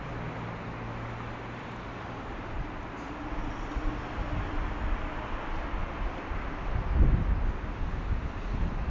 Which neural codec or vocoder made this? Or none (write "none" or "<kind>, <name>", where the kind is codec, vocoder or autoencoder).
none